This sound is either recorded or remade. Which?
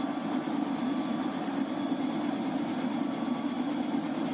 recorded